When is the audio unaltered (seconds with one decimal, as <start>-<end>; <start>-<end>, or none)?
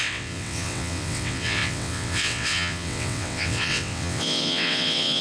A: none